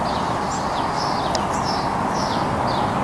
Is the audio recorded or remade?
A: recorded